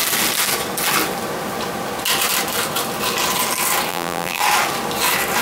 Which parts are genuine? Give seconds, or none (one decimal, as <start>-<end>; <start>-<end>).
0.0-3.9; 4.4-5.4